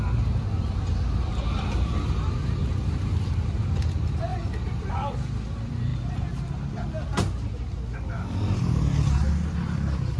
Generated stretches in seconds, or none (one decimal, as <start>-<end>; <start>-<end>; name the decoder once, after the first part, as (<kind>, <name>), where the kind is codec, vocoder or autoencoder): 2.6-3.8 (vocoder, BigVGAN v2); 4.3-4.9